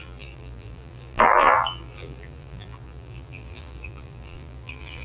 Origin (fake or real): fake